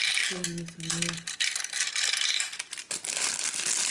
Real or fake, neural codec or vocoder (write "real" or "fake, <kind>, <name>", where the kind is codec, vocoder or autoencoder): real